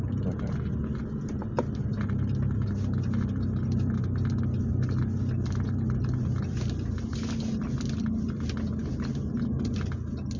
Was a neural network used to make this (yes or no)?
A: no